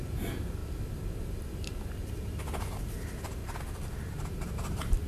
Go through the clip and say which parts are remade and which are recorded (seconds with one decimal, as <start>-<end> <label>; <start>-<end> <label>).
0.0-0.6 remade; 0.6-2.1 recorded; 2.1-3.4 remade; 3.4-4.3 recorded; 4.3-5.1 remade